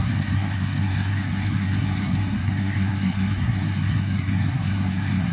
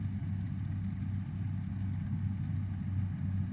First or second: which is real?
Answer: second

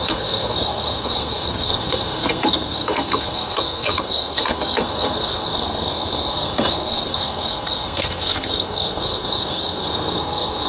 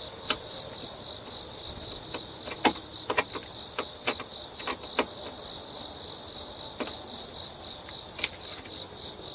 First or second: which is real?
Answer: second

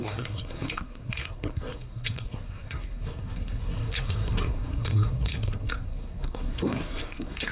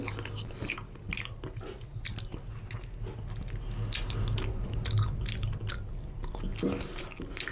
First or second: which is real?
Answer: second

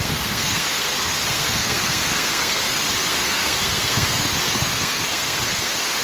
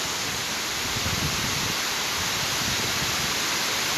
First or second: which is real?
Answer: second